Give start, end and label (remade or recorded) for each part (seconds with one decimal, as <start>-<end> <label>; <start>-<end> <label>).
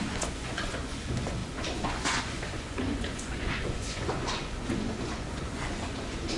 0.0-6.4 remade